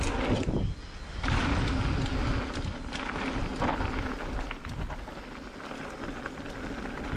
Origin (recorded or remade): recorded